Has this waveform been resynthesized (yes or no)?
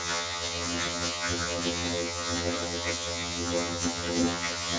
yes